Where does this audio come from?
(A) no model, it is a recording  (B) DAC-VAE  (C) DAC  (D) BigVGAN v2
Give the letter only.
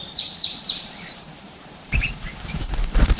D